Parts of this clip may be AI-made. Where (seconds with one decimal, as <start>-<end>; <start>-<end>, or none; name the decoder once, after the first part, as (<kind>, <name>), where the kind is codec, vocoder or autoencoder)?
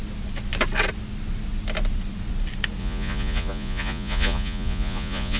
2.8-5.4 (vocoder, Vocos)